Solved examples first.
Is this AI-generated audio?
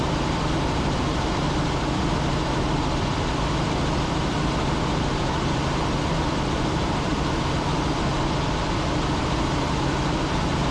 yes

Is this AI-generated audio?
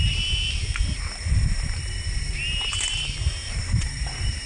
yes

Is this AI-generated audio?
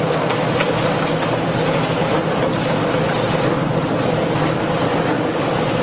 no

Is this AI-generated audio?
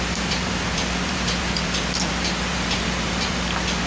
yes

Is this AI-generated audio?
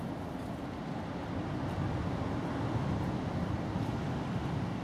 no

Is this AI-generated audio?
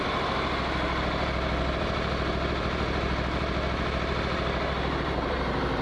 yes